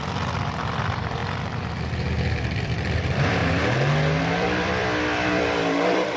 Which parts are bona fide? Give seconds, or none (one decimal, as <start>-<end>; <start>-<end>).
1.2-1.9; 3.4-4.2

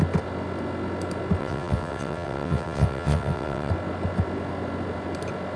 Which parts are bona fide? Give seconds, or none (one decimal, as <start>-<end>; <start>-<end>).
0.0-1.4; 3.7-5.6